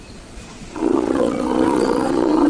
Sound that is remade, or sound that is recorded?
remade